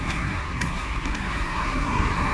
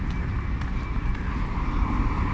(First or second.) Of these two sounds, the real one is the second